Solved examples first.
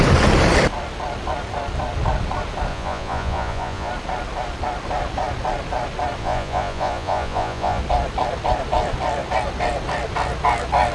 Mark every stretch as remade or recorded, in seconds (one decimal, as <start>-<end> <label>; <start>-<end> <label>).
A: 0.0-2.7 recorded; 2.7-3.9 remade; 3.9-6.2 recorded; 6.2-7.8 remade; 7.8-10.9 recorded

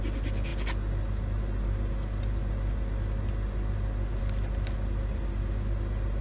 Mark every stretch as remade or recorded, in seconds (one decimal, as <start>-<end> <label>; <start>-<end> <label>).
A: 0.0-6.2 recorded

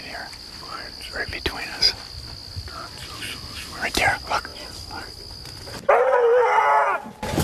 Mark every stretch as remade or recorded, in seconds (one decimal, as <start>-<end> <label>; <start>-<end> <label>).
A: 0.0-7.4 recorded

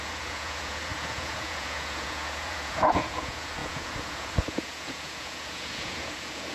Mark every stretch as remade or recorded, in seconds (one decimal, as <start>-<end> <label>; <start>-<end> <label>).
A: 0.0-6.5 remade

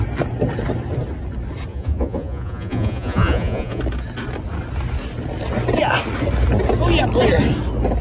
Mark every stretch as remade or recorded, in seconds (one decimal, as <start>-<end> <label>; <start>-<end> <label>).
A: 0.0-1.7 recorded; 1.7-3.8 remade; 3.8-8.0 recorded

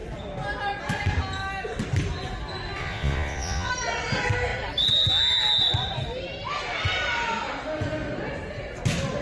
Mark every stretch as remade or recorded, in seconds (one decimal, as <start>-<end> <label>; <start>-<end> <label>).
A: 0.0-2.8 recorded; 2.8-3.7 remade; 3.7-9.2 recorded

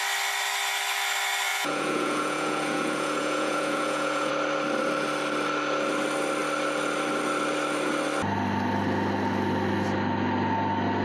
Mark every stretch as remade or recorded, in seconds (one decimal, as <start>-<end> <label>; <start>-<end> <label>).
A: 0.0-1.5 recorded; 1.5-4.3 remade; 4.3-11.0 recorded

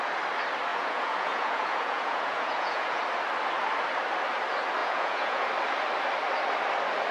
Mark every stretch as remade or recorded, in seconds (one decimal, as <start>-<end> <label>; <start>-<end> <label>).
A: 0.0-0.7 recorded; 0.7-3.0 remade; 3.0-4.8 recorded; 4.8-5.5 remade; 5.5-7.1 recorded